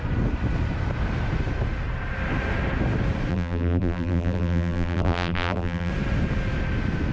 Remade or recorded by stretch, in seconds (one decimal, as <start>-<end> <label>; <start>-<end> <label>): 0.0-3.3 recorded; 3.3-5.9 remade; 5.9-7.1 recorded

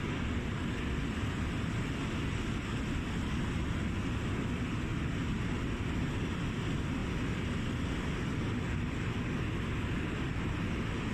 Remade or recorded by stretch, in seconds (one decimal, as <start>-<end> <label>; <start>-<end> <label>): 0.0-11.1 recorded

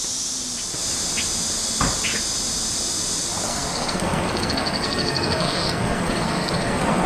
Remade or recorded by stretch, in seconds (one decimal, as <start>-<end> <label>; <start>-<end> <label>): 0.0-3.4 recorded; 3.4-7.1 remade

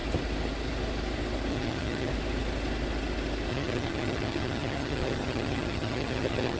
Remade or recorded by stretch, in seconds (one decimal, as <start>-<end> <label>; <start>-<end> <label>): 0.0-1.5 recorded; 1.5-2.1 remade; 2.1-3.5 recorded; 3.5-6.6 remade

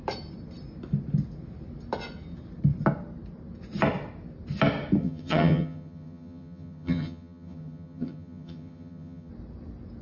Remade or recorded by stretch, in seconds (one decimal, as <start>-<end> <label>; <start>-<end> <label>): 0.0-5.0 recorded; 5.0-9.3 remade; 9.3-10.0 recorded

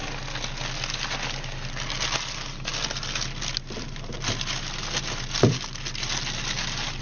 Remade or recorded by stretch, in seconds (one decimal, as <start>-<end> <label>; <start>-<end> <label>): 0.0-7.0 recorded